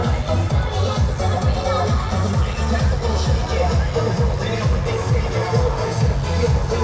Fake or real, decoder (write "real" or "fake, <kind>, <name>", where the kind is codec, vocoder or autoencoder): real